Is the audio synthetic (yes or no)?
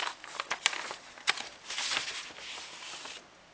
no